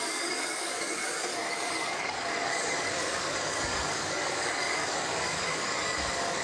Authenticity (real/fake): fake